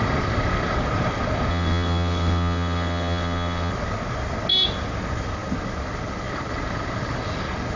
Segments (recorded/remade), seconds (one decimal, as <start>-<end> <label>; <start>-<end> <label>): 0.0-1.5 recorded; 1.5-3.7 remade; 3.7-7.8 recorded